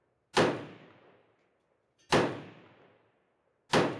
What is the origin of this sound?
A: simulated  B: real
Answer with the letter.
B